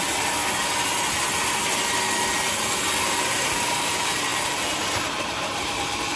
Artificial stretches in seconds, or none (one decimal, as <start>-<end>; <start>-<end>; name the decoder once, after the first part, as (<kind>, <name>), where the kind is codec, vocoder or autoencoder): 0.0-0.4 (vocoder, BigVGAN v2); 3.0-6.2